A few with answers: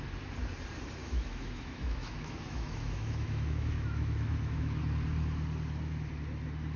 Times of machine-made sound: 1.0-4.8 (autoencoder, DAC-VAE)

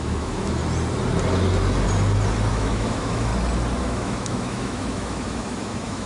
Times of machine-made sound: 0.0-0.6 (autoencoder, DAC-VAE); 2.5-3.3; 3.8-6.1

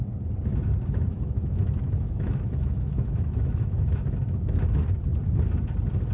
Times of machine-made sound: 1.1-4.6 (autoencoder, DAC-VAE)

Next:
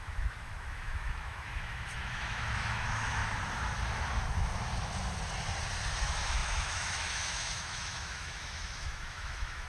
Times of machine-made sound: 0.0-3.2 (autoencoder, DAC-VAE); 6.0-9.7

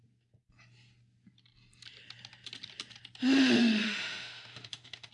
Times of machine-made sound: 3.6-5.1 (autoencoder, DAC-VAE)

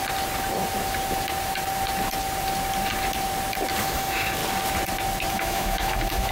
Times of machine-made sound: 3.8-4.4 (autoencoder, DAC-VAE); 5.3-6.3

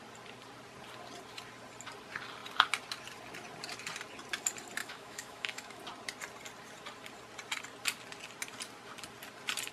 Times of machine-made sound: 4.8-5.8 (autoencoder, DAC-VAE)

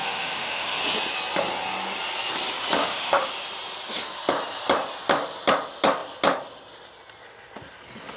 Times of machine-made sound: 0.0-0.8 (autoencoder, DAC-VAE); 2.8-3.3